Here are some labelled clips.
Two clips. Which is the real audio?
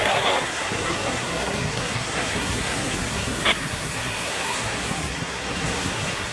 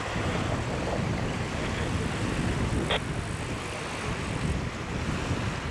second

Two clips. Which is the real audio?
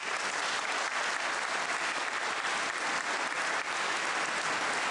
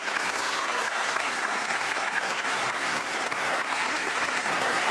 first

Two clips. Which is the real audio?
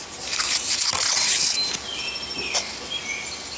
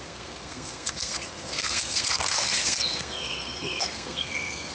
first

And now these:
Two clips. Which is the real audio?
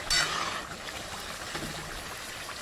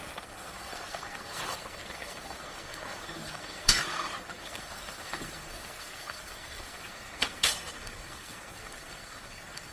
first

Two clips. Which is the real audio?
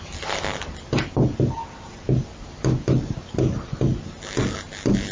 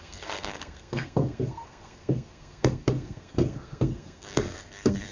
first